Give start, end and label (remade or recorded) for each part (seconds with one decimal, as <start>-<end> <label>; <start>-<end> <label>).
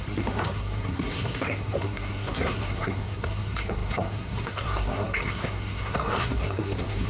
0.0-7.1 remade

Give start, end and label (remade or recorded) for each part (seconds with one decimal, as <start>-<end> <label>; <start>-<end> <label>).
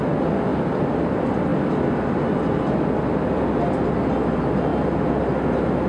0.0-5.9 recorded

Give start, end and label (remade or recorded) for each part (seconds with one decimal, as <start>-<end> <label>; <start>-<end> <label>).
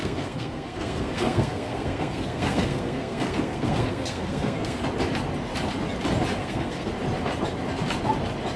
0.0-4.8 remade; 4.8-6.4 recorded; 6.4-6.9 remade; 6.9-8.6 recorded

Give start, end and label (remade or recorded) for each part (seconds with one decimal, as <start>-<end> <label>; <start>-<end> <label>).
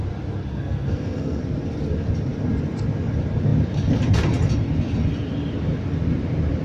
0.0-0.5 recorded; 0.5-1.4 remade; 1.4-6.6 recorded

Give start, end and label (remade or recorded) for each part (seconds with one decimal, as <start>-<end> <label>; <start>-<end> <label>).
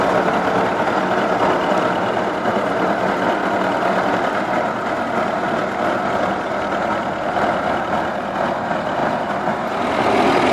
0.0-10.5 recorded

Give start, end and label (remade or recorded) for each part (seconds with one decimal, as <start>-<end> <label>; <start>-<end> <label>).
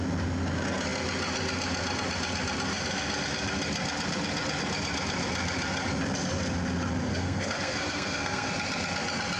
0.0-7.1 recorded; 7.1-8.5 remade; 8.5-9.4 recorded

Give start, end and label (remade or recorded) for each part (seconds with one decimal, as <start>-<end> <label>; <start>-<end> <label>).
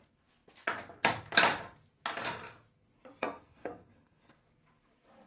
0.0-3.2 recorded; 3.2-4.4 remade; 4.4-5.3 recorded